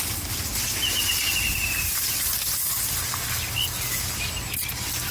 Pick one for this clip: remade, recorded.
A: recorded